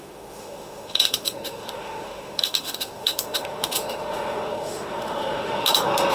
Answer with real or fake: fake